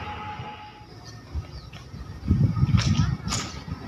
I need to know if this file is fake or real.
real